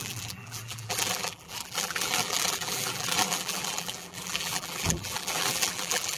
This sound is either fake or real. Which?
fake